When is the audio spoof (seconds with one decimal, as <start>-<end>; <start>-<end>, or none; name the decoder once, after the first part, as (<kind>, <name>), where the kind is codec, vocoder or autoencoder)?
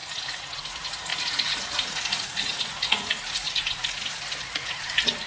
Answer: 0.0-5.3 (vocoder, Vocos)